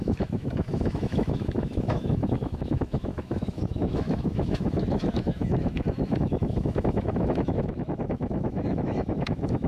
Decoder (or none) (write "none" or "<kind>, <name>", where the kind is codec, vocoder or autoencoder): autoencoder, DAC-VAE